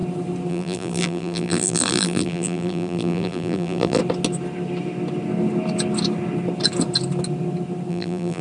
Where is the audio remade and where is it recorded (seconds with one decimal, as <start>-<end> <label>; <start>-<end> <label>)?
0.0-0.5 recorded; 0.5-4.0 remade; 4.0-7.9 recorded; 7.9-8.4 remade